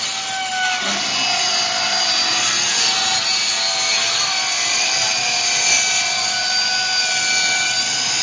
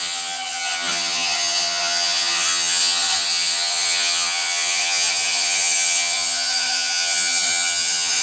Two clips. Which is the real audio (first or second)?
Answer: first